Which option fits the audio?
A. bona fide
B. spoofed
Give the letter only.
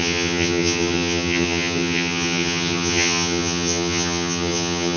B